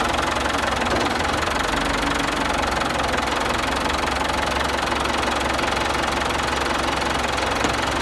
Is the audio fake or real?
real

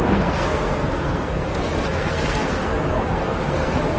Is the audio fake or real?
fake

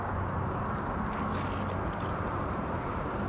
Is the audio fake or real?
real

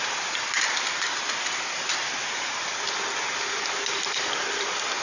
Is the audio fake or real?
real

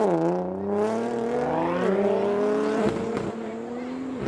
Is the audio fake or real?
real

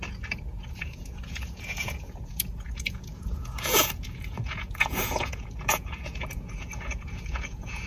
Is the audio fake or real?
fake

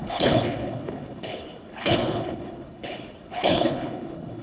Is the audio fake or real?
fake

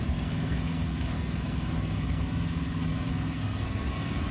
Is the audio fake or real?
fake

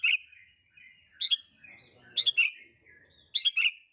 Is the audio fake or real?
real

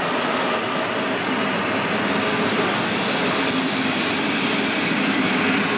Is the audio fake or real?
real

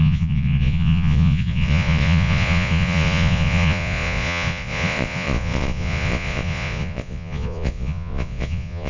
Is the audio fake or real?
fake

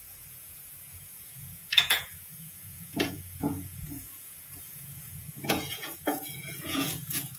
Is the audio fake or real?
fake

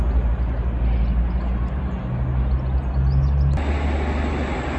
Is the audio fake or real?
real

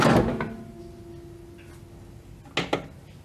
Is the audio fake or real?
real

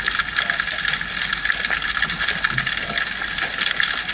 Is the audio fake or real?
real